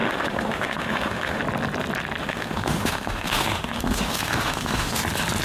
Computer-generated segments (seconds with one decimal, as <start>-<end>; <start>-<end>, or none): 0.0-1.4; 2.2-5.0